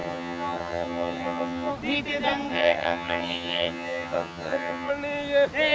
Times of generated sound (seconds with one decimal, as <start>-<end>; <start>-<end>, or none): 0.0-1.7; 2.5-4.9

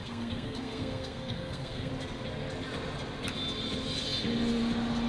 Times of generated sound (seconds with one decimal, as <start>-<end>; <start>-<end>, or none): 0.0-1.9

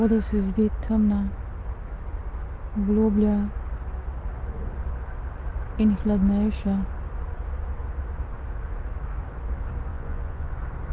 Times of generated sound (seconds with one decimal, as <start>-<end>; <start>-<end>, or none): 9.9-10.5

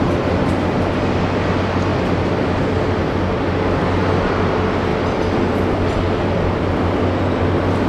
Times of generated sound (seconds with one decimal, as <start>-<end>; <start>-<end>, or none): none

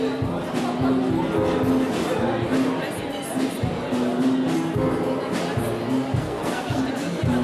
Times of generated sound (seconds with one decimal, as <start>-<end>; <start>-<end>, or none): 6.2-6.8

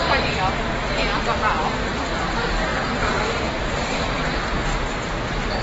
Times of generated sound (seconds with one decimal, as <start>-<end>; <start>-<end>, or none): 2.7-4.9

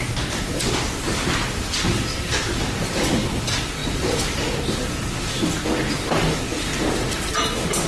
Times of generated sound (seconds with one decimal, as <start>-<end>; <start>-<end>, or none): 3.8-4.6

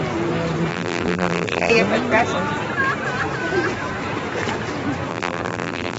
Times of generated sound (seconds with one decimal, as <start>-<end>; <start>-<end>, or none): 0.7-1.7; 5.1-6.0